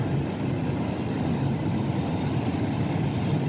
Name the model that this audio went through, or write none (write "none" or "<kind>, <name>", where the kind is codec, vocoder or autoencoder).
none